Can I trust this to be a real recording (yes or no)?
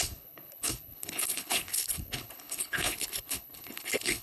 no